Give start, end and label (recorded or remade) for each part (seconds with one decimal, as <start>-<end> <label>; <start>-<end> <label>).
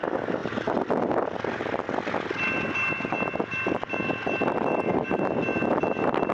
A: 0.0-6.3 recorded